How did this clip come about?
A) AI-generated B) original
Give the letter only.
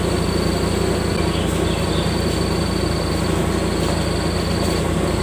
B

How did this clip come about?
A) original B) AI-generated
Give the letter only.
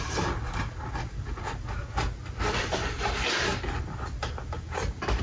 A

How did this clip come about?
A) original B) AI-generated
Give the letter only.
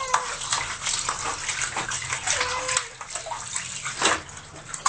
A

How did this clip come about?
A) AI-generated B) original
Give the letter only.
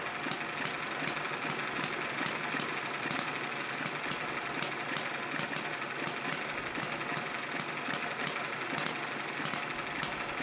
B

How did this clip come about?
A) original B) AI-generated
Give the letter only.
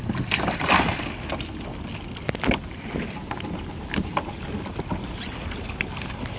A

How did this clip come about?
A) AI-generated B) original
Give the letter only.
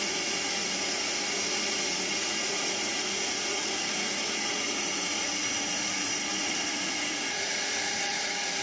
A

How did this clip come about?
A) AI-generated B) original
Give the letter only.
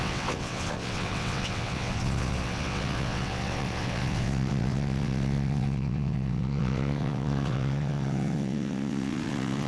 A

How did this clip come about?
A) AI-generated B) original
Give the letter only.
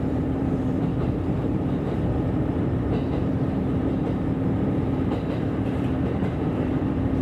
A